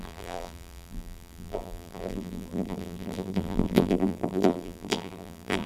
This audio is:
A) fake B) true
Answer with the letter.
A